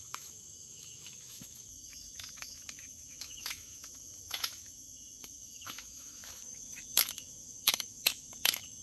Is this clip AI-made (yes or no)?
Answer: yes